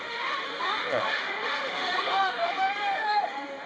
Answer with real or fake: fake